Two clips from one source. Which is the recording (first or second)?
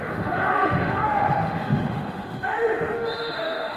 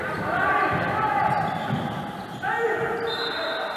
second